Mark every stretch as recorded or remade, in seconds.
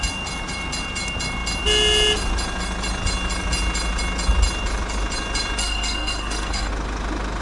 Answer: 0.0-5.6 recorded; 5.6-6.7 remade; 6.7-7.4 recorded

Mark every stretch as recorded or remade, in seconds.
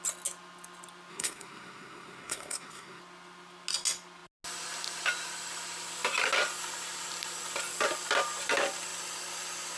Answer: 0.0-1.1 recorded; 1.1-3.0 remade; 3.0-9.8 recorded